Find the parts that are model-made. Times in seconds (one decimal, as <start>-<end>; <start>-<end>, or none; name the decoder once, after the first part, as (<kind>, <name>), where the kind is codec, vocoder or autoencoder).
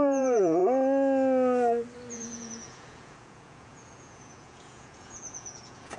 0.0-0.6 (vocoder, Vocos); 2.1-6.0